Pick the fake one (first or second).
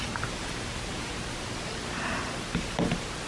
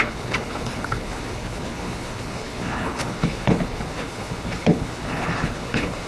second